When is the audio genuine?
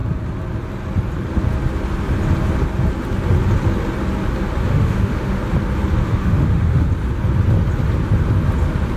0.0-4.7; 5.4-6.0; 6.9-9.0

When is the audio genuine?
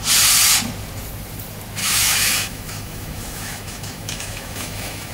0.0-1.8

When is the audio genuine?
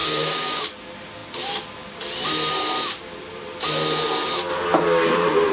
0.6-5.5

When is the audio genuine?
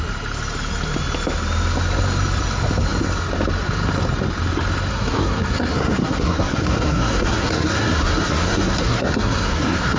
0.0-4.9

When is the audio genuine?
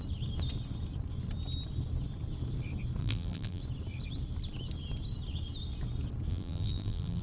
0.0-3.0; 3.6-6.3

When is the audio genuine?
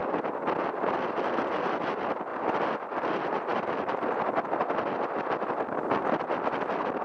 0.0-7.0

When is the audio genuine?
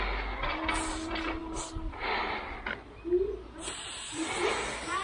0.0-5.0